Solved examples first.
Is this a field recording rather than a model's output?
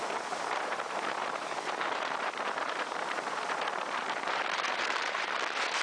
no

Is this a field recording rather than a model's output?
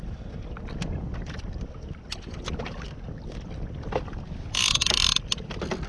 yes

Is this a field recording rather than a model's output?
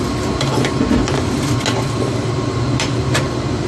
yes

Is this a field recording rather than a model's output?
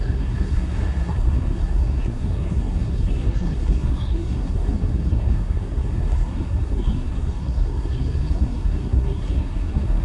no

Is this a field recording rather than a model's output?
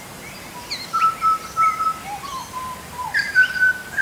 yes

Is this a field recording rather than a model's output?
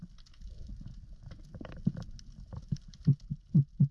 yes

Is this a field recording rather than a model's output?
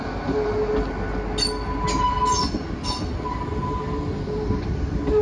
yes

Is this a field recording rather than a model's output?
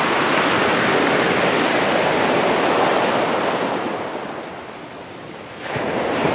yes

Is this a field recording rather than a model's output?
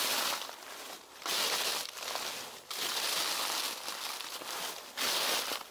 yes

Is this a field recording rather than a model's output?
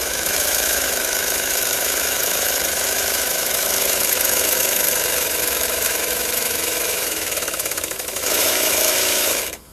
no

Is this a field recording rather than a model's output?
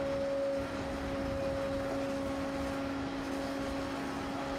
yes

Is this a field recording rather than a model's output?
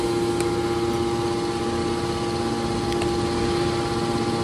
yes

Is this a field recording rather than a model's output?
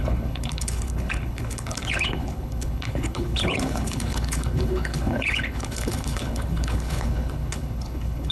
no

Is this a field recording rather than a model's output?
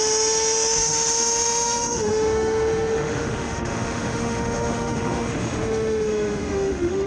no